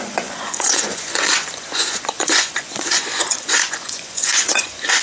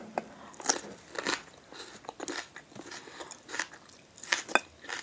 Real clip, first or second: second